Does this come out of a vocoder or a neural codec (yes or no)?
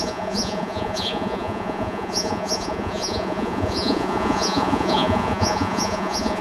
yes